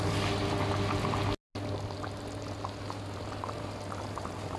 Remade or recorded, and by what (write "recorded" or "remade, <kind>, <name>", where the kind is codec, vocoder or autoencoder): recorded